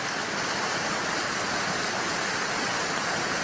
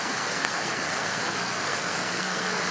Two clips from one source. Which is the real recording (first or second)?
first